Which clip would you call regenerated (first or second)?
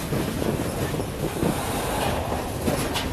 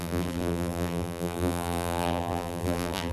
second